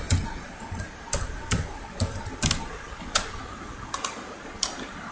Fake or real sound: fake